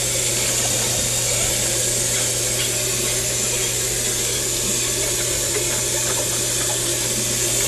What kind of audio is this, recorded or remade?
recorded